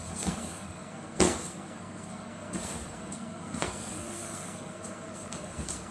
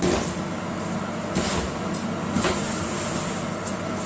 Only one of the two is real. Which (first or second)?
second